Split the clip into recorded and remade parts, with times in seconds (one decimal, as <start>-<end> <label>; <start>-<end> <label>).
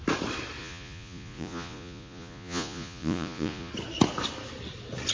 0.0-0.6 recorded; 0.6-3.7 remade; 3.7-5.1 recorded